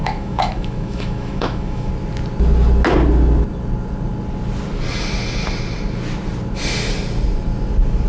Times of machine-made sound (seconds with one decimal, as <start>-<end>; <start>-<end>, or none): 0.0-1.9